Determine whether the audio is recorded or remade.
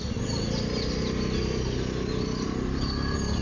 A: recorded